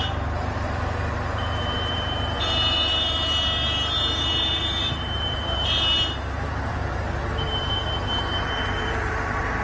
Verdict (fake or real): fake